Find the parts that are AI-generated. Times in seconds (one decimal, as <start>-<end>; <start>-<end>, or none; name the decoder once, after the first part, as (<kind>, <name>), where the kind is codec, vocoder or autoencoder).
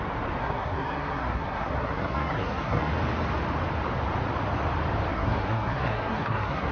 0.4-2.9 (codec, SNAC); 5.1-6.7